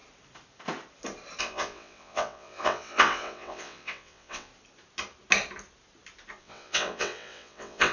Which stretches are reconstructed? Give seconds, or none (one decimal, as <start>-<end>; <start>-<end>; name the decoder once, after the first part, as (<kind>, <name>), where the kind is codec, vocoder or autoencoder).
1.4-4.5 (vocoder, WaveNeXt); 6.4-7.9